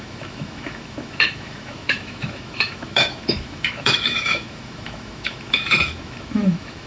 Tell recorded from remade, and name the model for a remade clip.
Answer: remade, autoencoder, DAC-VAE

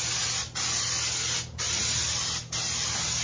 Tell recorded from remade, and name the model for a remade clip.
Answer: recorded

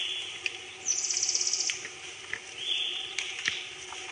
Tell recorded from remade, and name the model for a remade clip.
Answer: recorded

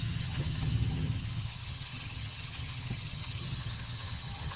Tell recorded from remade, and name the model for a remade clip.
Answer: remade, vocoder, HiFi-GAN